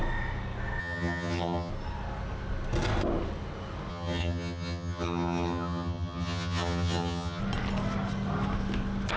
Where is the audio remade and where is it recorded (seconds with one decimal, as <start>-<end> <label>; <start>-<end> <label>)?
0.0-0.8 recorded; 0.8-1.7 remade; 1.7-3.9 recorded; 3.9-7.4 remade; 7.4-9.2 recorded

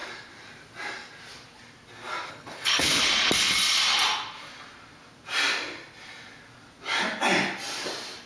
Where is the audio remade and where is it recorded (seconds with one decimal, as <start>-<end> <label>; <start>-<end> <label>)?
0.0-2.3 recorded; 2.3-3.0 remade; 3.0-8.3 recorded

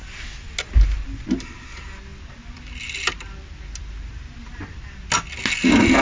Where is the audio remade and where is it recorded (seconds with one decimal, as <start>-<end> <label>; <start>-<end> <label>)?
0.0-6.0 recorded

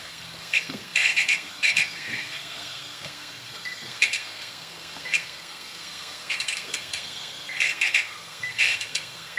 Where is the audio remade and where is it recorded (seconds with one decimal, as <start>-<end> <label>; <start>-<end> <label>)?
0.0-9.4 remade

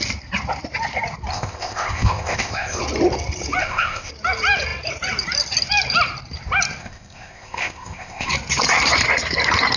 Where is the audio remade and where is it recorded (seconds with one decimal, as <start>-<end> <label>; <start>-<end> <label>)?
0.0-1.3 recorded; 1.3-2.8 remade; 2.8-3.6 recorded; 3.6-4.1 remade; 4.1-6.8 recorded; 6.8-8.3 remade; 8.3-9.8 recorded

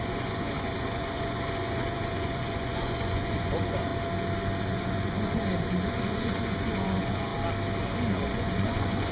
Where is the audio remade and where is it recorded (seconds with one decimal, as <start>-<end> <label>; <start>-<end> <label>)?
0.0-3.9 remade; 3.9-4.6 recorded; 4.6-7.3 remade; 7.3-7.8 recorded; 7.8-9.1 remade